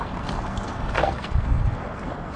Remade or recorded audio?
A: remade